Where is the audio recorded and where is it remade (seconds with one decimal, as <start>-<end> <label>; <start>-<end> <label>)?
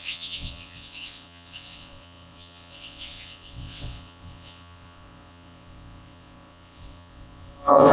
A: 0.0-7.9 remade